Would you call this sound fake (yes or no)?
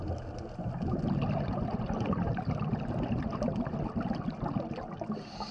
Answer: no